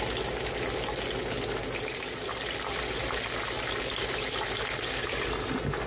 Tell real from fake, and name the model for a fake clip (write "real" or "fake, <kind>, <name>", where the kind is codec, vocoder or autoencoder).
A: real